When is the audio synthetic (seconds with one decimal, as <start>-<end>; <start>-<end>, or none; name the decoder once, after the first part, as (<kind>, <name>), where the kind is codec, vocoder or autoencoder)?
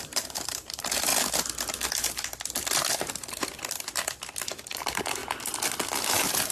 0.0-1.1 (vocoder, BigVGAN v2); 4.6-5.2; 5.9-6.5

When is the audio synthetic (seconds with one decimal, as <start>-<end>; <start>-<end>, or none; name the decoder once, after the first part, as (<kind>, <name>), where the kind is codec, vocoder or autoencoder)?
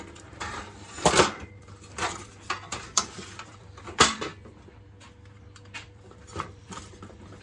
0.0-4.3 (vocoder, BigVGAN v2); 5.4-7.4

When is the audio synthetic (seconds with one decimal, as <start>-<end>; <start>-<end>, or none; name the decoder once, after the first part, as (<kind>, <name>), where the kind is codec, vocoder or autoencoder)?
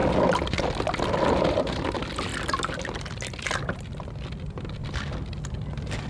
1.4-2.3 (vocoder, BigVGAN v2)